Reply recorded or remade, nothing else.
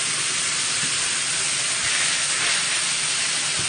recorded